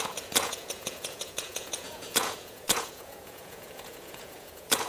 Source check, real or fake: fake